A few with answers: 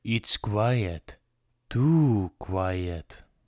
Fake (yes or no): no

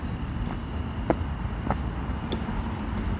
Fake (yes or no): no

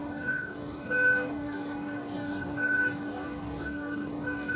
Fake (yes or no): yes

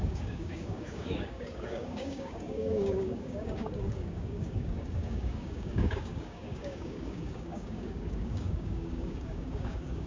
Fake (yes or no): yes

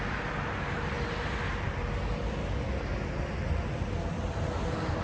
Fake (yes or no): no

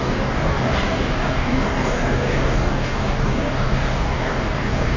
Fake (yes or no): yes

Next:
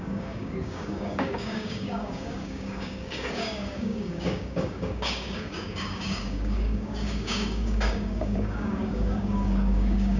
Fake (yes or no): yes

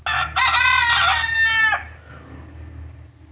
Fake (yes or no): no